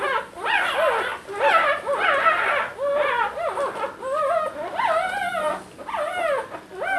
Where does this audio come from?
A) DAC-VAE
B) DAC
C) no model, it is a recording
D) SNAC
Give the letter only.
C